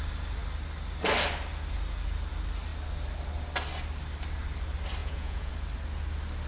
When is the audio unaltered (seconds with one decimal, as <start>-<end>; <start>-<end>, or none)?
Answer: 0.0-5.0; 5.5-6.5